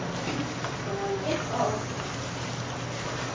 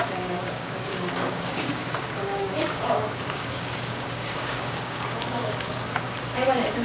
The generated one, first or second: second